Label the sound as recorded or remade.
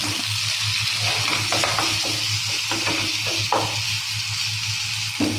recorded